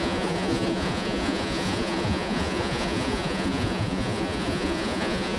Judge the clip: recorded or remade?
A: remade